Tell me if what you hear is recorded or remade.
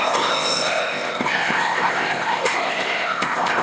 remade